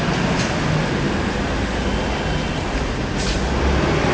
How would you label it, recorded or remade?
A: recorded